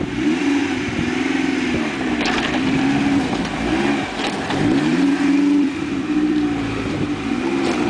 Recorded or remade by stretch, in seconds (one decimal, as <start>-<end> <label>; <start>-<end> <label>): 0.0-0.6 recorded; 0.6-3.5 remade; 3.5-4.9 recorded; 4.9-7.3 remade; 7.3-7.9 recorded